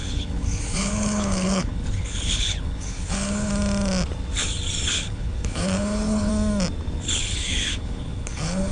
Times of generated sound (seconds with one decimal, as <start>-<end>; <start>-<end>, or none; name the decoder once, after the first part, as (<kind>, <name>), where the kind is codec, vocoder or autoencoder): 0.0-3.5 (codec, HILCodec); 4.9-6.3; 7.2-8.7